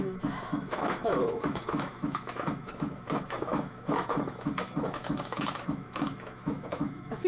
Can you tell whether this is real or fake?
fake